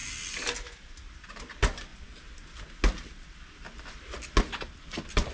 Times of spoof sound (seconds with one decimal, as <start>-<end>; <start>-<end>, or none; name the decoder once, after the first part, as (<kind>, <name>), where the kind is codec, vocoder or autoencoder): 1.4-1.9 (vocoder, BigVGAN v2); 4.4-5.3